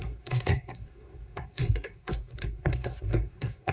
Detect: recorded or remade remade